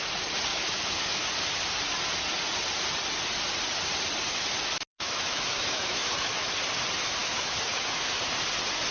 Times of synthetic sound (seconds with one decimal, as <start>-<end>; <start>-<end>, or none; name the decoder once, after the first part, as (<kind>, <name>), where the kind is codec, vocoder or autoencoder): 0.5-1.3 (autoencoder, DAC-VAE); 4.9-6.5; 7.2-8.2